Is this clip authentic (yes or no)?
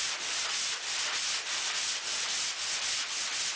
yes